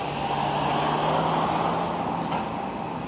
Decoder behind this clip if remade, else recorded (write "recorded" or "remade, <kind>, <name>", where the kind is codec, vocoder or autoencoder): recorded